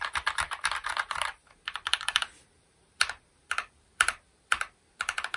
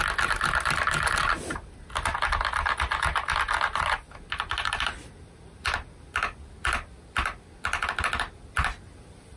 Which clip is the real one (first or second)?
second